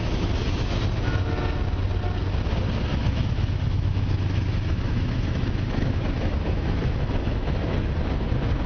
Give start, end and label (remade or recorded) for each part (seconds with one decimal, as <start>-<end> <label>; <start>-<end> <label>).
0.0-0.8 remade; 0.8-2.9 recorded; 2.9-7.6 remade; 7.6-8.7 recorded

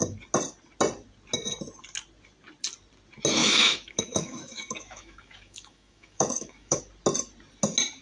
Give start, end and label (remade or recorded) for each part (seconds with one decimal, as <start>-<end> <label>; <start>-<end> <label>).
0.0-3.4 recorded; 3.4-6.8 remade; 6.8-8.0 recorded

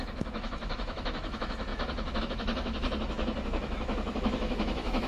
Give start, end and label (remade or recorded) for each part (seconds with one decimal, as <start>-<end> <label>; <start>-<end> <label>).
0.0-5.1 remade

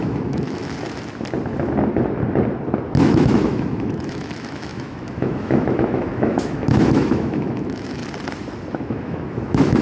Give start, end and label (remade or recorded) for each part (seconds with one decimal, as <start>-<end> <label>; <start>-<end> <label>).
0.0-0.6 remade; 0.6-3.0 recorded; 3.0-8.0 remade; 8.0-8.7 recorded; 8.7-9.8 remade

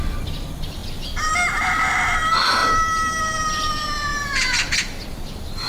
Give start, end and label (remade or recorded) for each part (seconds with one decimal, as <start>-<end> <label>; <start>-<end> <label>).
0.0-5.7 recorded

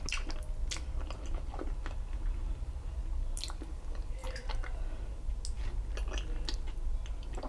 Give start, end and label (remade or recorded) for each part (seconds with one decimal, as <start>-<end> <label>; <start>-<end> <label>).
0.0-7.5 recorded

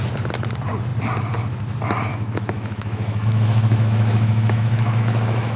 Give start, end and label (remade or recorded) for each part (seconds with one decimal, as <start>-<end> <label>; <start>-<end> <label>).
0.0-2.1 recorded; 2.1-5.6 remade

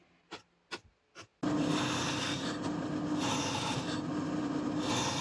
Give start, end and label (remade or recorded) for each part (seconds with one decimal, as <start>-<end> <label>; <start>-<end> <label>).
0.0-5.2 recorded